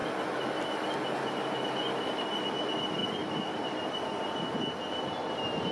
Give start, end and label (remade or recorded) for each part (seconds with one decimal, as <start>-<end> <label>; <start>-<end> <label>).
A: 0.0-5.7 recorded

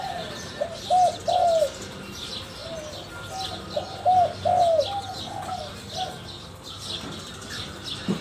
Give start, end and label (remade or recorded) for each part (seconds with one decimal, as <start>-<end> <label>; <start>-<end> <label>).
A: 0.0-2.6 remade; 2.6-4.8 recorded; 4.8-8.2 remade

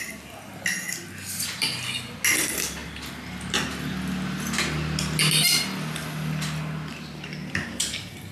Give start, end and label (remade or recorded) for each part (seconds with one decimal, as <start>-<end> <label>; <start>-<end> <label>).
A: 0.0-7.4 recorded; 7.4-8.3 remade

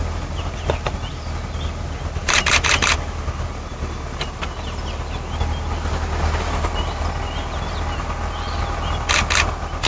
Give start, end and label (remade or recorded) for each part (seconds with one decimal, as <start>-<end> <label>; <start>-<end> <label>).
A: 0.0-2.2 recorded; 2.2-4.4 remade; 4.4-9.9 recorded

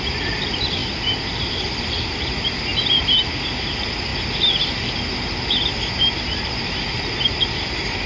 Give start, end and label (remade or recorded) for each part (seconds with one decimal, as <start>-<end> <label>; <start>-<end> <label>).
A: 0.0-4.1 remade; 4.1-6.0 recorded; 6.0-8.1 remade